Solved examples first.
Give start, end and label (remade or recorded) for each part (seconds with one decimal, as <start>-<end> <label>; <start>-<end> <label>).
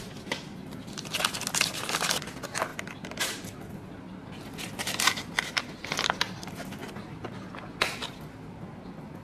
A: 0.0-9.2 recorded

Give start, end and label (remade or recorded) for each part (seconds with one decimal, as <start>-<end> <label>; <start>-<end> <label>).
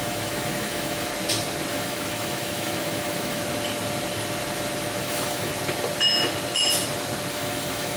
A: 0.0-1.1 remade; 1.1-1.7 recorded; 1.7-3.4 remade; 3.4-5.0 recorded; 5.0-5.5 remade; 5.5-7.3 recorded; 7.3-8.0 remade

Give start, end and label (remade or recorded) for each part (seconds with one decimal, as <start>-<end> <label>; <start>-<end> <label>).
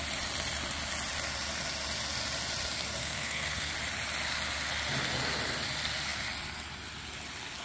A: 0.0-3.0 recorded; 3.0-3.7 remade; 3.7-7.6 recorded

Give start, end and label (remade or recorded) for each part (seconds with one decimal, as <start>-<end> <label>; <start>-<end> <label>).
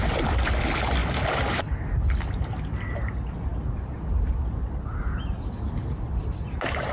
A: 0.0-6.9 recorded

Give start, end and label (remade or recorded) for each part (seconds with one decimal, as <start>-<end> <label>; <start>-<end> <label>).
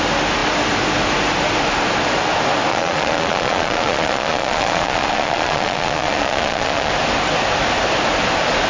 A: 0.0-2.7 recorded; 2.7-6.9 remade; 6.9-8.7 recorded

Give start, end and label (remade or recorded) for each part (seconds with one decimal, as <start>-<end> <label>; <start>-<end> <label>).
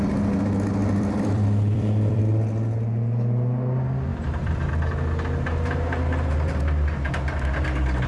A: 0.0-0.8 recorded; 0.8-2.2 remade; 2.2-4.1 recorded; 4.1-4.7 remade; 4.7-8.1 recorded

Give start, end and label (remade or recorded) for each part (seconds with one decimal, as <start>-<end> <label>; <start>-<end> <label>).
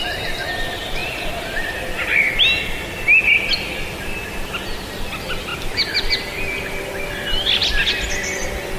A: 0.0-8.8 recorded